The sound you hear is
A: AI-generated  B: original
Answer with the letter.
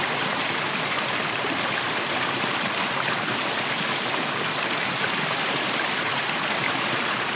B